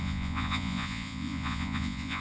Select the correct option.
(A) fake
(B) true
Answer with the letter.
A